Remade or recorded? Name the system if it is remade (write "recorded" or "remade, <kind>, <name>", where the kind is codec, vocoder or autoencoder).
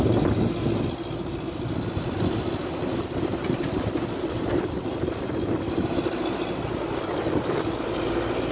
recorded